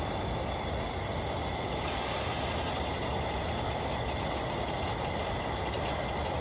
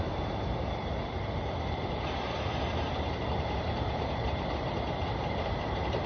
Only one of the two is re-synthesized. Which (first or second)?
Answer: second